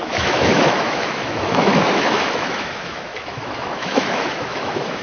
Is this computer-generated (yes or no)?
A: yes